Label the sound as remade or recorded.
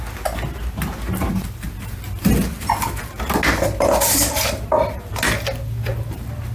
recorded